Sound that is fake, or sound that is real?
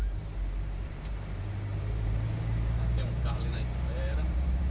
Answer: fake